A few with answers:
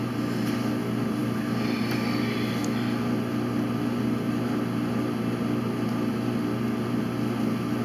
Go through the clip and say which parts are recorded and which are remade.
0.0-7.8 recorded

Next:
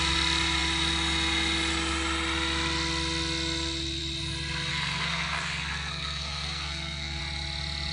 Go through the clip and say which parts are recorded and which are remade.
0.0-4.7 recorded; 4.7-7.2 remade; 7.2-7.9 recorded

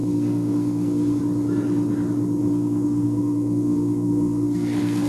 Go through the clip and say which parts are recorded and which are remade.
0.0-1.2 remade; 1.2-2.4 recorded; 2.4-5.1 remade

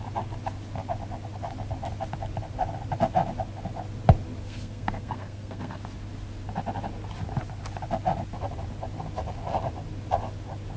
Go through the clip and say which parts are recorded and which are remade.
0.0-4.4 recorded; 4.4-5.8 remade; 5.8-10.8 recorded

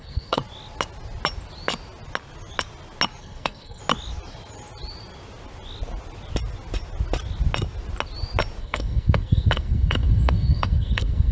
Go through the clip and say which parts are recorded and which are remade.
0.0-0.4 remade; 0.4-3.2 recorded; 3.2-3.8 remade; 3.8-8.6 recorded; 8.6-11.3 remade

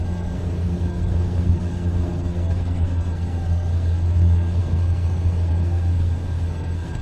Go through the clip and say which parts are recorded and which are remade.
0.0-7.0 remade

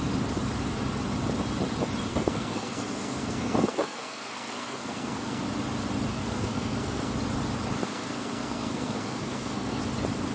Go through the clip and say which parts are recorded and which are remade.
0.0-2.1 recorded; 2.1-5.4 remade; 5.4-6.1 recorded; 6.1-7.1 remade; 7.1-7.8 recorded; 7.8-9.8 remade; 9.8-10.3 recorded